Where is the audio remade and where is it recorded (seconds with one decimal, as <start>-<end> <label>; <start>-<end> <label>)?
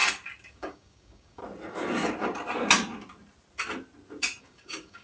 0.0-0.5 recorded; 0.5-1.4 remade; 1.4-4.4 recorded; 4.4-5.0 remade